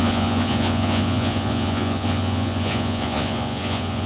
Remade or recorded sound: remade